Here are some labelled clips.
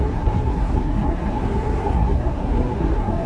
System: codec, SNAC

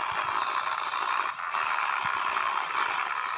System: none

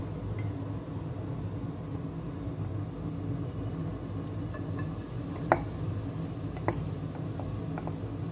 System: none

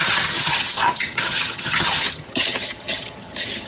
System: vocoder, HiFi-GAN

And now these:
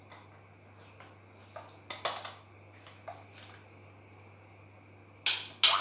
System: none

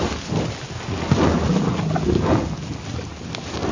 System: none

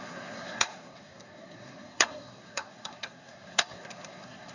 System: codec, SNAC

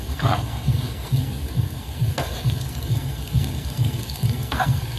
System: codec, SNAC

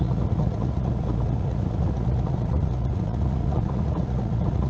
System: vocoder, Vocos